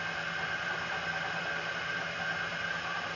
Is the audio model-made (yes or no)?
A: no